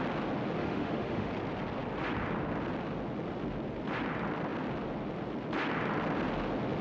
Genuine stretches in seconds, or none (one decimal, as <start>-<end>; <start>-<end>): 0.0-0.6; 1.3-6.8